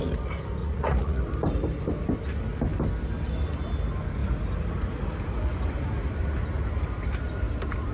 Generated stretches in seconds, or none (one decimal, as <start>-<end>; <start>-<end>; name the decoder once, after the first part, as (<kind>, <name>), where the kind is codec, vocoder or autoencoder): 0.6-1.2 (vocoder, Vocos)